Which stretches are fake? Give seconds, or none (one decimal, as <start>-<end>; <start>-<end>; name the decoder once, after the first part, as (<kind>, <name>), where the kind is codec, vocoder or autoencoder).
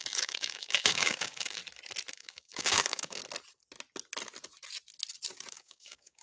0.0-1.6 (codec, DAC); 2.1-3.2; 5.5-6.2